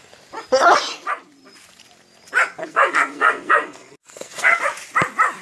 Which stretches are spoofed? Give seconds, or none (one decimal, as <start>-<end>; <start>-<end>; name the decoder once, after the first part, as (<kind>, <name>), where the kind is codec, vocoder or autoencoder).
2.6-4.6 (codec, SNAC)